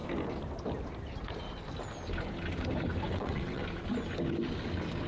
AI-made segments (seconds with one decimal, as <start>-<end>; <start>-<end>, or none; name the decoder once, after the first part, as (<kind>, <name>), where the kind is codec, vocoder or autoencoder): 3.1-3.6 (vocoder, WaveNeXt)